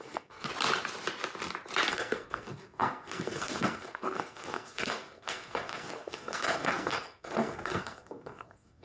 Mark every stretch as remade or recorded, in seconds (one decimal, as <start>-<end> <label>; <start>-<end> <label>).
0.0-0.5 remade; 0.5-1.9 recorded; 1.9-8.8 remade